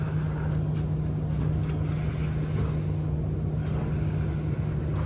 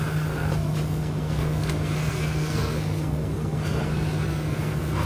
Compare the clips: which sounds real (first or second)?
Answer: first